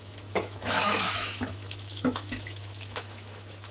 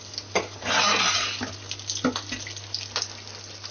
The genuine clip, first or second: second